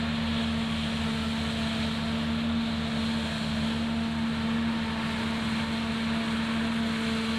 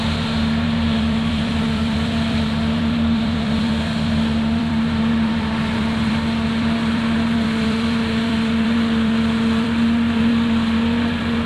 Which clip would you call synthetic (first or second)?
second